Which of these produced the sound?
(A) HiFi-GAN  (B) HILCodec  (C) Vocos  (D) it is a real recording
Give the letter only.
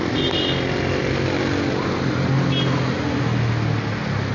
D